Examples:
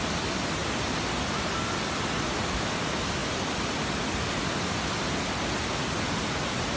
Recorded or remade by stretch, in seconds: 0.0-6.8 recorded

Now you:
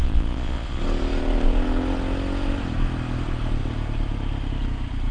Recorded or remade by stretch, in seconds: 0.0-0.8 remade; 0.8-5.1 recorded